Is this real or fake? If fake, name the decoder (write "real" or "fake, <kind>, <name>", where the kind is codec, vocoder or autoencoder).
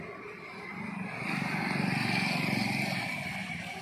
real